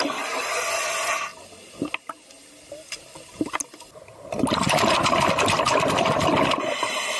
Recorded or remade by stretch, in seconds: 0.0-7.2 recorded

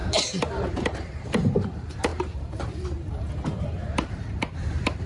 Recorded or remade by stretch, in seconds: 0.0-5.1 remade

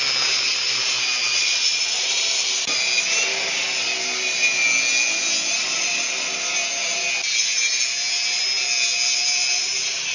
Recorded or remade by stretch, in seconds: 0.0-1.3 recorded; 1.3-2.5 remade; 2.5-10.1 recorded

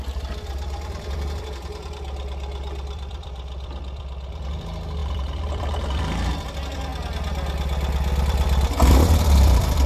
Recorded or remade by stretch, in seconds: 0.0-6.9 remade; 6.9-8.2 recorded; 8.2-9.9 remade

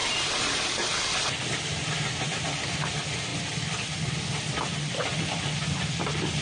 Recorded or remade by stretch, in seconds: 0.0-1.2 remade; 1.2-3.3 recorded; 3.3-6.4 remade

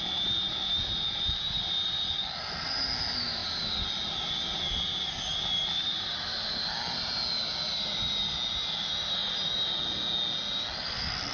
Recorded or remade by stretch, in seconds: 0.0-3.4 recorded; 3.4-3.9 remade; 3.9-5.3 recorded; 5.3-7.1 remade; 7.1-11.3 recorded

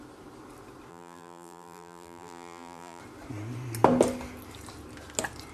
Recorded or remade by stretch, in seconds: 0.0-0.9 recorded; 0.9-3.0 remade; 3.0-5.5 recorded